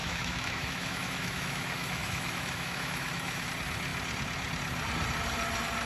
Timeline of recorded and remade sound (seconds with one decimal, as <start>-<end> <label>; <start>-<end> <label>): 0.0-3.5 remade; 3.5-5.9 recorded